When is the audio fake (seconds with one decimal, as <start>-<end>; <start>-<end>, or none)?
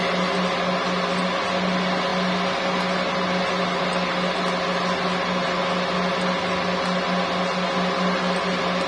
none